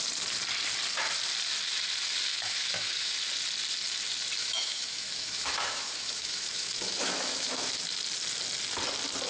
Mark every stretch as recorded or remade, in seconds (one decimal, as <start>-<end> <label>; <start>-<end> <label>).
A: 0.0-2.3 recorded; 2.3-3.1 remade; 3.1-4.4 recorded; 4.4-7.7 remade; 7.7-9.3 recorded